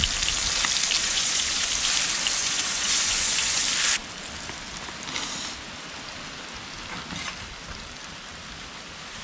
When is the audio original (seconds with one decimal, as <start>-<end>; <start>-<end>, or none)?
0.0-1.0; 1.7-2.4; 3.6-9.2

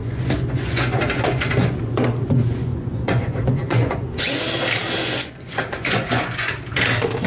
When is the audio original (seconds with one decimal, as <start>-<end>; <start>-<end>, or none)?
4.4-5.0; 6.5-7.3

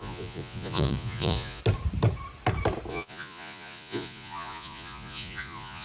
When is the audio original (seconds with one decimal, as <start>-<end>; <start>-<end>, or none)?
1.6-2.9

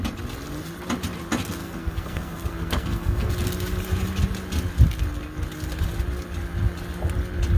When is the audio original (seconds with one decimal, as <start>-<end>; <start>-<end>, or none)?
0.0-1.6; 3.3-7.6

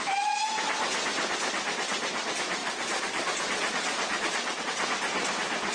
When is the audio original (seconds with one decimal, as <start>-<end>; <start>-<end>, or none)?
0.0-2.6; 4.6-5.7

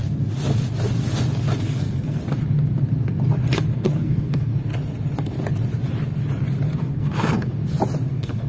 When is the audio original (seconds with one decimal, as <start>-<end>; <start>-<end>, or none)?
0.0-1.6; 2.2-3.7; 4.5-6.8; 7.5-8.1